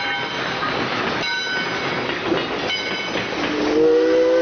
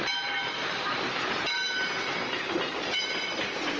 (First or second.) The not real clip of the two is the second